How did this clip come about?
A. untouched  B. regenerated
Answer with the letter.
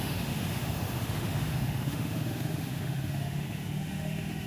B